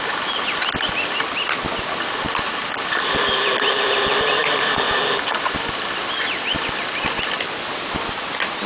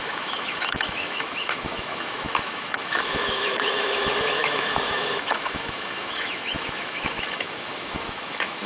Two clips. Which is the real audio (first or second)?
first